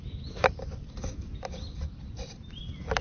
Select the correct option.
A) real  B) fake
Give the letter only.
A